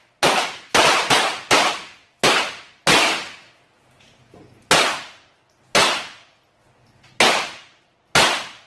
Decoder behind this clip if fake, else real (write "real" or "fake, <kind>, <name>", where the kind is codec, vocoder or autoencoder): real